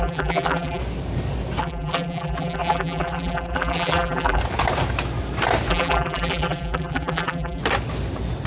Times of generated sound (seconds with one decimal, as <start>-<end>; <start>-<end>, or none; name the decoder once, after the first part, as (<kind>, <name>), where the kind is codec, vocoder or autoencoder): 0.0-0.8 (vocoder, BigVGAN v2); 1.6-4.4; 5.7-7.6